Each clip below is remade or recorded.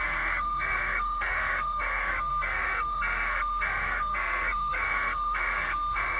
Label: remade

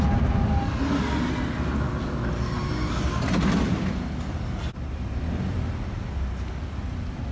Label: recorded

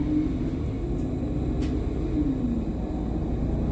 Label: recorded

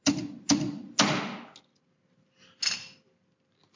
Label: recorded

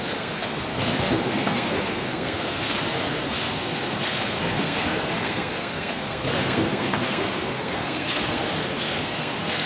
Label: remade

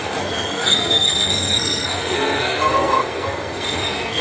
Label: remade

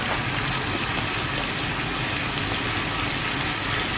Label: recorded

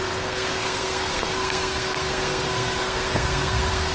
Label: remade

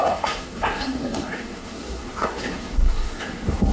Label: remade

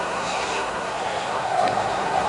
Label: remade